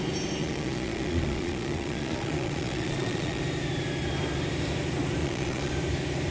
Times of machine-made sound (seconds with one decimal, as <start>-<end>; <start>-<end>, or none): 0.4-3.4; 5.2-5.7